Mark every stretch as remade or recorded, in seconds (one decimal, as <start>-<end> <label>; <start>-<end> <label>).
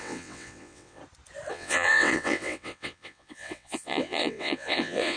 0.0-1.0 remade; 1.0-1.5 recorded; 1.5-5.2 remade